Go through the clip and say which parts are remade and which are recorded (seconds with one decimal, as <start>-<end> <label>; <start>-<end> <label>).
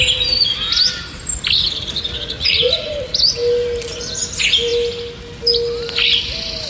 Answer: 0.0-1.8 recorded; 1.8-2.9 remade; 2.9-6.7 recorded